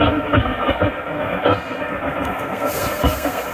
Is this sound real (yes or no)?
no